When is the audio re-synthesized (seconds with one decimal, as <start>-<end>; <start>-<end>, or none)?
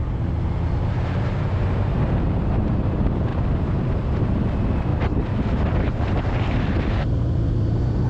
0.0-4.9; 6.2-8.1